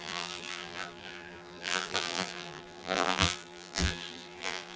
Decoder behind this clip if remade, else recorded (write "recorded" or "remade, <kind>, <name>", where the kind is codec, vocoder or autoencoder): remade, vocoder, BigVGAN v2